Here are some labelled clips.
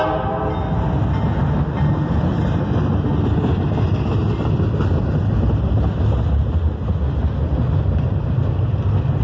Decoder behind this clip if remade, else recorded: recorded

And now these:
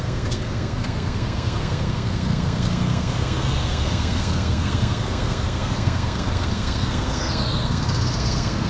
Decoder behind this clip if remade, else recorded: remade, codec, SNAC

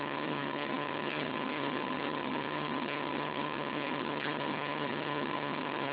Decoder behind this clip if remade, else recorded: remade, vocoder, HiFi-GAN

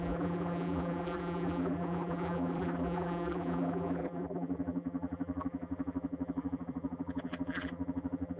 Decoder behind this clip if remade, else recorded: remade, vocoder, BigVGAN v2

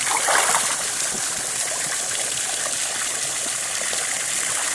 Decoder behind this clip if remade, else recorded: recorded